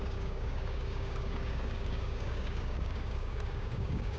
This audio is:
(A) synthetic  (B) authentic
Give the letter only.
A